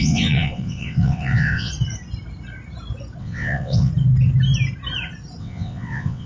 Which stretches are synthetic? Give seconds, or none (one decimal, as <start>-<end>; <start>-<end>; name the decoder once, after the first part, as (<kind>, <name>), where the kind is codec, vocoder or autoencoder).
0.0-1.7 (vocoder, WaveNeXt); 3.2-3.9; 5.4-6.3